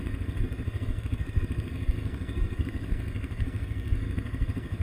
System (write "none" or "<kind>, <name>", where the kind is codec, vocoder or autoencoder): codec, SNAC